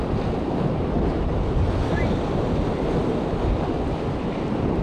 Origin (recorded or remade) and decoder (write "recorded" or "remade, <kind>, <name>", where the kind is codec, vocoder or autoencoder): recorded